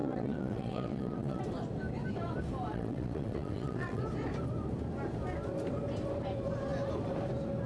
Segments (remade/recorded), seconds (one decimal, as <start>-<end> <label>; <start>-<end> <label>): 0.0-1.4 remade; 1.4-2.7 recorded; 2.7-4.0 remade; 4.0-7.7 recorded